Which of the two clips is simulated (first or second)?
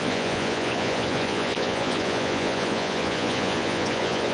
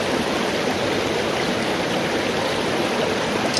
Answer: first